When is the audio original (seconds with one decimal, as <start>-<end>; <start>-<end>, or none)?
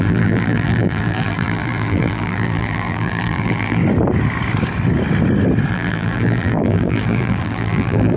3.8-5.7